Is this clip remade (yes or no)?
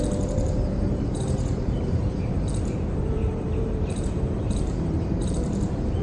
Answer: yes